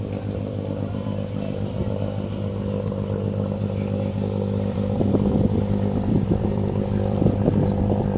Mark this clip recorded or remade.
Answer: remade